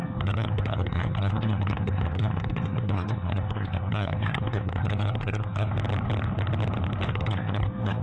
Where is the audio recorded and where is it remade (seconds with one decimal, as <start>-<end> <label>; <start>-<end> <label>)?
0.0-5.7 remade; 5.7-7.1 recorded; 7.1-8.0 remade